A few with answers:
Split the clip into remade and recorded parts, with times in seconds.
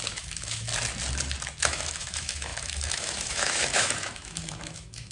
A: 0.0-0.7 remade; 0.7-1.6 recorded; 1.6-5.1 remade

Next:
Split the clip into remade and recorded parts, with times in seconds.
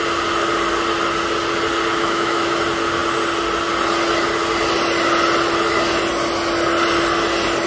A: 0.0-1.9 recorded; 1.9-2.5 remade; 2.5-7.7 recorded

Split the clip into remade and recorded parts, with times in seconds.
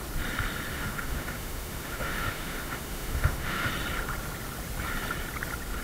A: 0.0-0.7 recorded; 0.7-3.7 remade; 3.7-5.8 recorded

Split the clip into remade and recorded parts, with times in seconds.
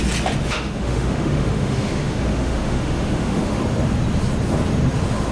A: 0.0-0.4 recorded; 0.4-3.6 remade; 3.6-5.3 recorded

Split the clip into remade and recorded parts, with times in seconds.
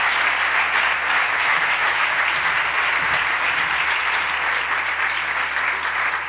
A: 0.0-1.2 recorded; 1.2-2.2 remade; 2.2-6.3 recorded